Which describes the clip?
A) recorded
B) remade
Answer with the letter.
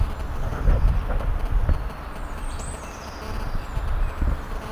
A